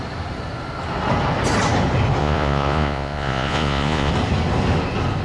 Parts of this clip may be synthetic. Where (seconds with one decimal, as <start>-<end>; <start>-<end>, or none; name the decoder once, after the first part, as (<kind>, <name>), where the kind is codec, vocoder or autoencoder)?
2.2-4.1 (vocoder, Vocos)